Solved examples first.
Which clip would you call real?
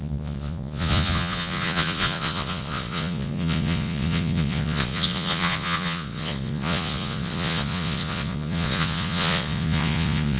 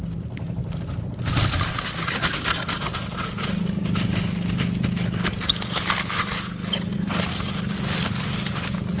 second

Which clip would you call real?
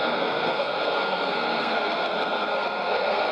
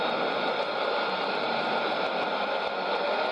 second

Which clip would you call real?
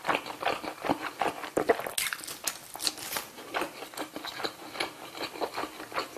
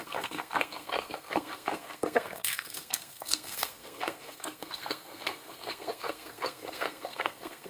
first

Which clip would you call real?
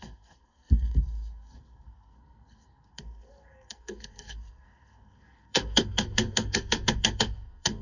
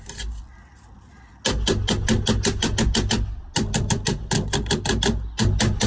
second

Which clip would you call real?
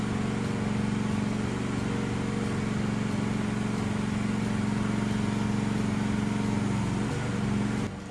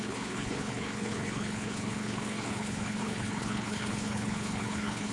first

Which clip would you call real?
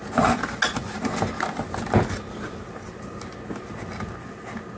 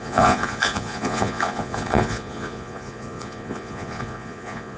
first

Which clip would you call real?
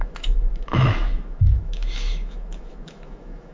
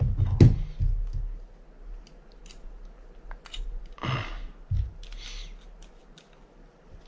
second